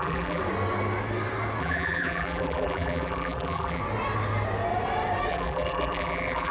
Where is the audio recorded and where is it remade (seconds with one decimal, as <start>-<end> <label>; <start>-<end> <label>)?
0.0-0.4 remade; 0.4-1.6 recorded; 1.6-3.8 remade; 3.8-5.3 recorded; 5.3-6.5 remade